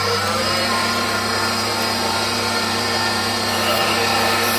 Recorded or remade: remade